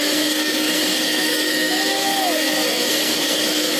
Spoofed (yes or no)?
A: yes